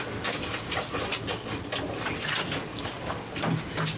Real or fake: real